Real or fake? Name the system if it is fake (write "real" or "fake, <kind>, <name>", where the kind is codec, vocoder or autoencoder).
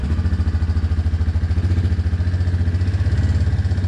real